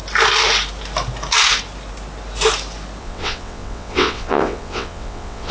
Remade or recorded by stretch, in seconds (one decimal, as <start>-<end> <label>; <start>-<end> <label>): 0.0-3.0 recorded; 3.0-5.5 remade